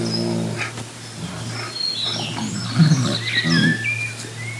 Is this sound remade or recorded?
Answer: recorded